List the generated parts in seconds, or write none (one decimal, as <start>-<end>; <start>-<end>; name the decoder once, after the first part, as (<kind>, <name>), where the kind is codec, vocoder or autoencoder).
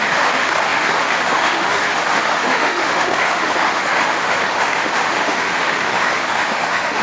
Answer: 0.0-7.0 (autoencoder, DAC-VAE)